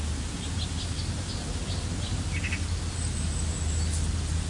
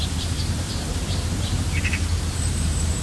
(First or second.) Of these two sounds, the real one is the first